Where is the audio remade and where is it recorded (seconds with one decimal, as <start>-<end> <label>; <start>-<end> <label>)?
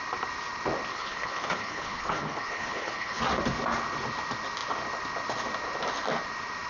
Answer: 0.0-0.9 recorded; 0.9-3.2 remade; 3.2-6.7 recorded